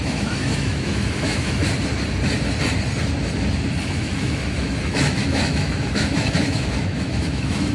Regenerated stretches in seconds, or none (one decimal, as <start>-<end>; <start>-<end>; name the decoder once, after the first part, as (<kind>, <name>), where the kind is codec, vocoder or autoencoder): 0.0-1.6 (autoencoder, DAC-VAE); 3.8-7.7